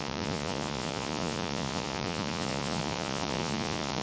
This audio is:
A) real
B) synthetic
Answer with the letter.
B